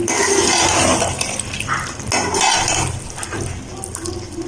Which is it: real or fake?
real